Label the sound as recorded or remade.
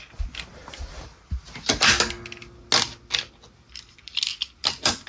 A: recorded